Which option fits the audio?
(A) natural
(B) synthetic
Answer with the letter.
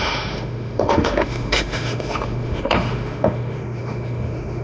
B